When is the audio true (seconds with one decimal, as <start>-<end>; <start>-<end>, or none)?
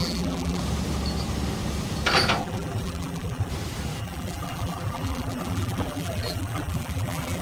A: 0.6-2.4; 3.5-4.0